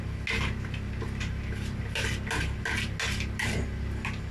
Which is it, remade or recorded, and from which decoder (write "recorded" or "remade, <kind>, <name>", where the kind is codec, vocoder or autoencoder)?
recorded